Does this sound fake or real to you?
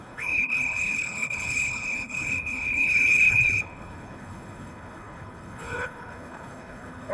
fake